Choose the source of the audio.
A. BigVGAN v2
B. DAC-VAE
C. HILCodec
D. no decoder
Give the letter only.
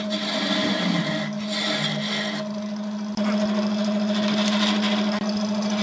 D